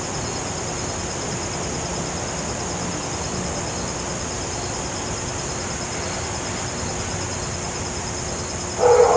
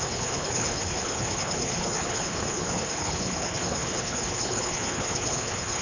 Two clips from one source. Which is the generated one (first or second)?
second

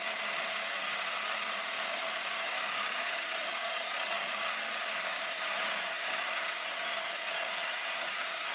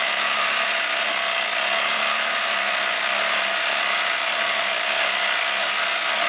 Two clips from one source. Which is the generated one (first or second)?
first